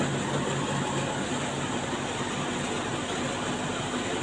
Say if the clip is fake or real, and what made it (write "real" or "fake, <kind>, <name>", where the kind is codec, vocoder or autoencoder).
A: real